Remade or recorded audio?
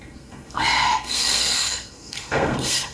remade